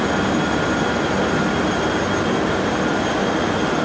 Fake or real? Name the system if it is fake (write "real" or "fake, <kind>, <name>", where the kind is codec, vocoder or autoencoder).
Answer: real